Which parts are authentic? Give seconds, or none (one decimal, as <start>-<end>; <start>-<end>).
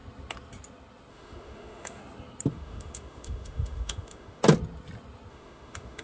0.0-1.1; 2.0-2.5; 4.4-5.3